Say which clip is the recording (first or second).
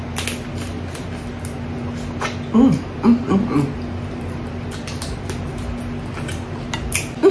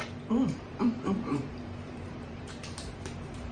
first